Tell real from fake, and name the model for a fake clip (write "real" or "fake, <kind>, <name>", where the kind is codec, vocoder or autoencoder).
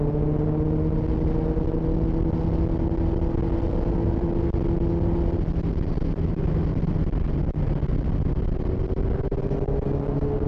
real